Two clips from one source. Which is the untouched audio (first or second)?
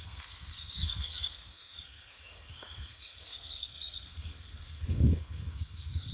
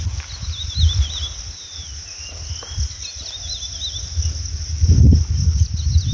second